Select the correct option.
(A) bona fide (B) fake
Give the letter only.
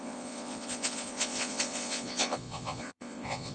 B